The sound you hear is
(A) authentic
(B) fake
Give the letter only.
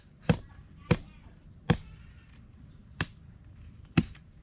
B